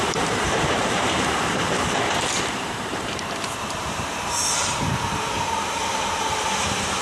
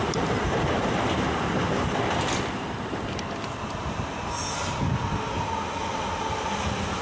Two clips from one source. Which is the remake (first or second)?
first